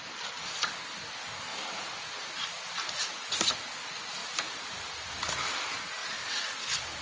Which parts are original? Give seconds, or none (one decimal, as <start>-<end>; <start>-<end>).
0.0-1.5; 3.3-4.2; 5.1-6.0